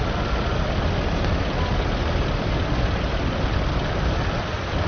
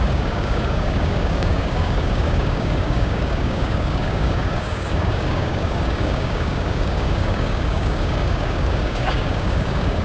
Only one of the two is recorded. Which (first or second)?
first